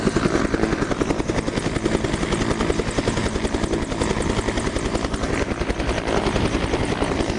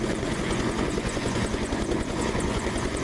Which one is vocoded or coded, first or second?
second